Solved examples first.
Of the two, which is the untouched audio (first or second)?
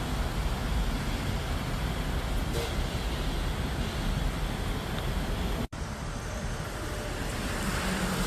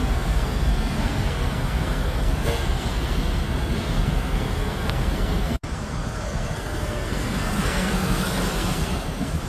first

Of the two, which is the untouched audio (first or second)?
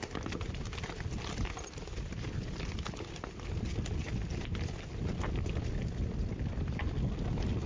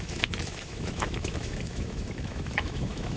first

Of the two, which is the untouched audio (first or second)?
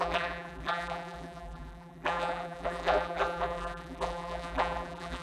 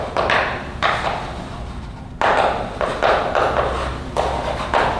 second